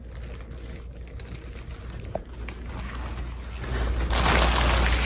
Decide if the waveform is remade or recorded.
recorded